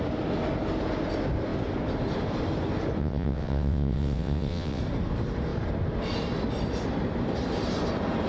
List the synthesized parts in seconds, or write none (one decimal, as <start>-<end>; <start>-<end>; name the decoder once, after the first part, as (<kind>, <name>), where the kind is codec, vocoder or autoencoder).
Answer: 3.0-4.8 (vocoder, WaveNeXt)